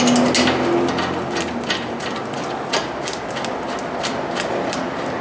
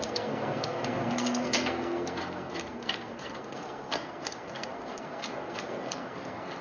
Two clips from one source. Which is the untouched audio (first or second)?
first